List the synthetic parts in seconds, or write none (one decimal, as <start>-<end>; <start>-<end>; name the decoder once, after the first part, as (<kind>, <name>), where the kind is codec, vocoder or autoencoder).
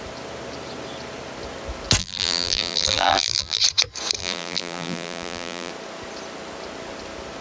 2.0-3.6 (vocoder, BigVGAN v2); 4.2-5.7